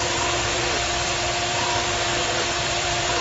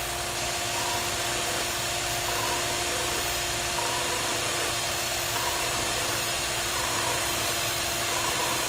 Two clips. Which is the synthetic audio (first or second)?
first